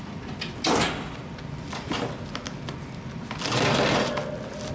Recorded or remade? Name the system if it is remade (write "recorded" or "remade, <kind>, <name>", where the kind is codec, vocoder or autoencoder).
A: recorded